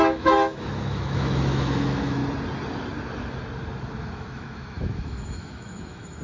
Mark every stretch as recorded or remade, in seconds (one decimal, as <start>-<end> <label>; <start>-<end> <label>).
0.0-2.2 remade; 2.2-4.0 recorded; 4.0-6.2 remade